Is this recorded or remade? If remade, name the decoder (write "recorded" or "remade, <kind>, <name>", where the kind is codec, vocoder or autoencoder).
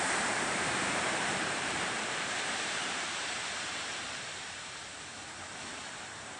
remade, vocoder, BigVGAN v2